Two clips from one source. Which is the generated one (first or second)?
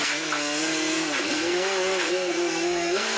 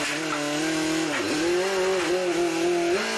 first